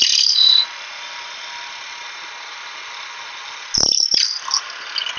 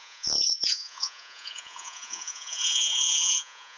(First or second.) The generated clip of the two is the second